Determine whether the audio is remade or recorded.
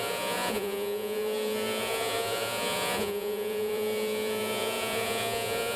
remade